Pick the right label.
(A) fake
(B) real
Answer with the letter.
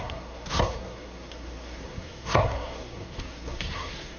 A